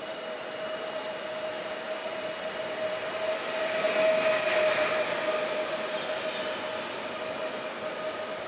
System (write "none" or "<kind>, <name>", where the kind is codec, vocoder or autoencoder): none